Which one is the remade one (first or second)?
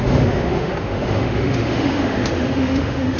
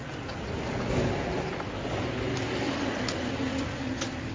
first